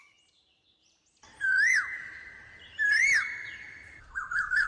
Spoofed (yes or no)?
yes